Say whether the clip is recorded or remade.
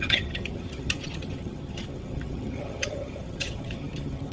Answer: remade